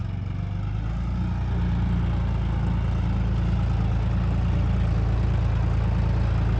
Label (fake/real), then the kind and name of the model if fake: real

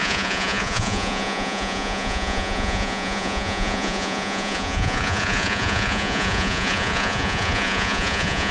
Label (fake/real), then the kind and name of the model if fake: fake, vocoder, Vocos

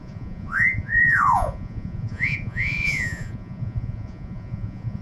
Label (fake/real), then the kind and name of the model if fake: fake, vocoder, Vocos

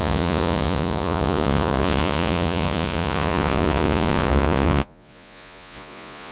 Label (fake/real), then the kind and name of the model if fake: fake, vocoder, Vocos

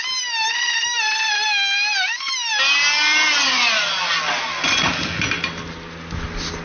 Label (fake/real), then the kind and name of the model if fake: real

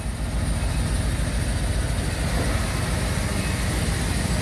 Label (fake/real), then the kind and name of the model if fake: real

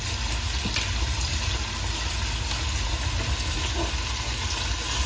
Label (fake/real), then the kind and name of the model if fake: real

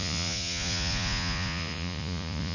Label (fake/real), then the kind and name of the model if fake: fake, vocoder, Vocos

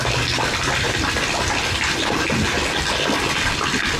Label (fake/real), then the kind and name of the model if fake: real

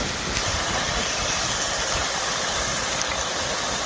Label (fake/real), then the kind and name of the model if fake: real